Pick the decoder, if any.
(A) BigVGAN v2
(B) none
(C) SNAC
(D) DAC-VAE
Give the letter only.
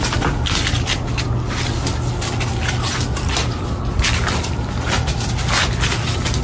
B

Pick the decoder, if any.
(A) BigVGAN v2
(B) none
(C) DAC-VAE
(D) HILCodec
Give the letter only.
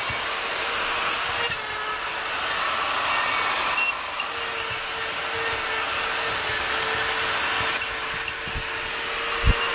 B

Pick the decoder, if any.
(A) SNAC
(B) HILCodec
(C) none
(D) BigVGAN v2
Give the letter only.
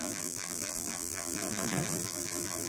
D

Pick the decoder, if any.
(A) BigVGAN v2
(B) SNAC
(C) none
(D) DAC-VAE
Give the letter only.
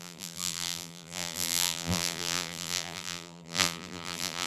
A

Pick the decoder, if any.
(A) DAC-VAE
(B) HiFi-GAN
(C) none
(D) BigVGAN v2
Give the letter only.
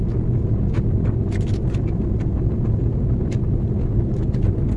C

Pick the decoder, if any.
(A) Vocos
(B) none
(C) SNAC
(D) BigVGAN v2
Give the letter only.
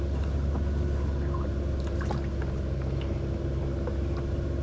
B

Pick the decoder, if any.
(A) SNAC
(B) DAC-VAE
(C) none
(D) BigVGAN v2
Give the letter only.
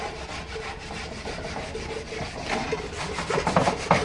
C